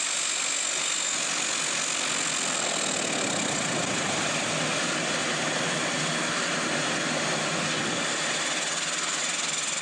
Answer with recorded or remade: recorded